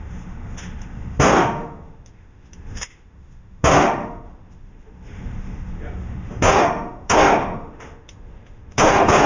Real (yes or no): no